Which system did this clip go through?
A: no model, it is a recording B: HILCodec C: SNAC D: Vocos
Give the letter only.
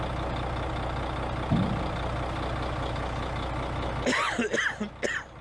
A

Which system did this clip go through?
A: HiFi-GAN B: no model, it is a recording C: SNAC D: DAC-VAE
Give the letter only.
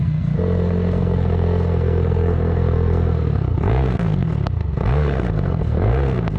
C